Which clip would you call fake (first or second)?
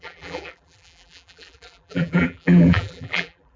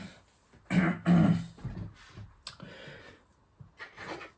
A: first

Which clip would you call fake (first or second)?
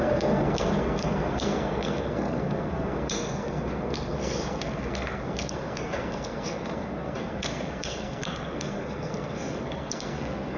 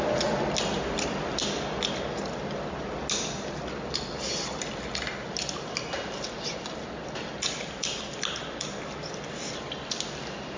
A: first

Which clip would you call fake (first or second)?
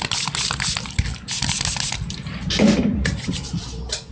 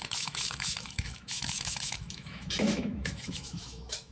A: second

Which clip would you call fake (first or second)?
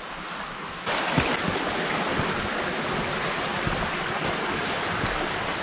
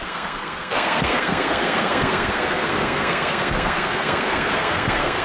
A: second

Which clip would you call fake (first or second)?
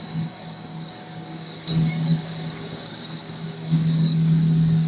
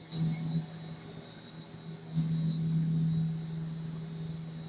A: first